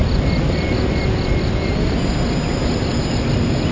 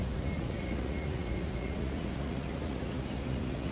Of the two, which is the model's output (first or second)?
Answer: second